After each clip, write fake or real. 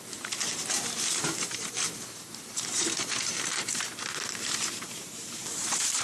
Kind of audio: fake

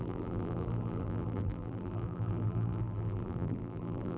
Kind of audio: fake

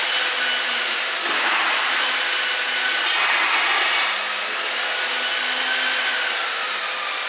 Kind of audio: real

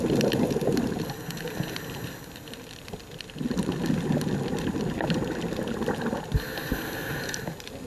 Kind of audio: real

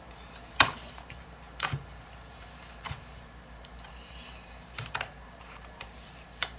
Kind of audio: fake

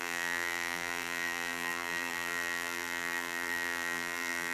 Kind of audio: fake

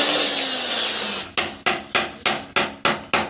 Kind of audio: real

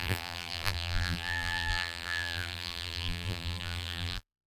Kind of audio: fake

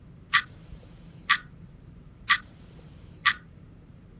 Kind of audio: fake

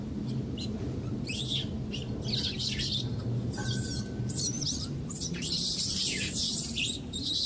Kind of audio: fake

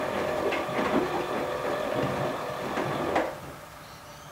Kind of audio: real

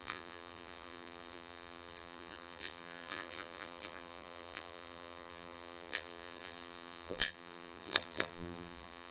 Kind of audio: fake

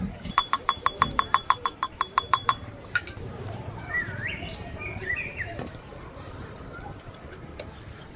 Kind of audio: fake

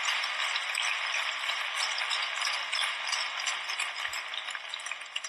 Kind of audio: real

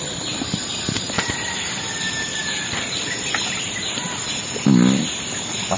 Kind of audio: fake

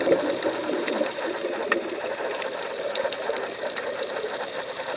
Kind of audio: fake